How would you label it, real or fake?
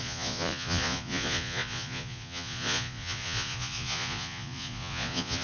fake